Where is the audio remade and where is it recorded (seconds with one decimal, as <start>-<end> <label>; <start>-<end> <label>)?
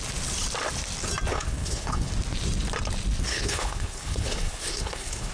0.0-1.3 recorded; 1.3-2.1 remade; 2.1-3.3 recorded; 3.3-5.3 remade